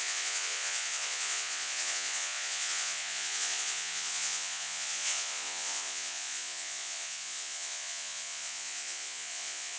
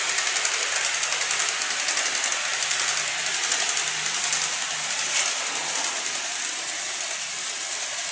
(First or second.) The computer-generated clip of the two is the first